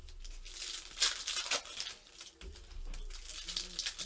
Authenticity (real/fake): real